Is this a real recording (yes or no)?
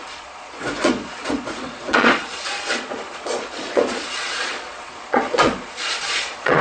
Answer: no